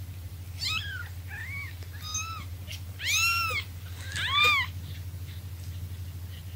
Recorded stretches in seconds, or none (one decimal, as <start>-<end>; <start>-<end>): 0.0-6.6